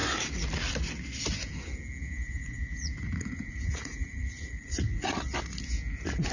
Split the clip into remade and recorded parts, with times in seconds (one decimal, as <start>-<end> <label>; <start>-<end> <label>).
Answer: 0.0-2.0 recorded; 2.0-5.2 remade; 5.2-6.3 recorded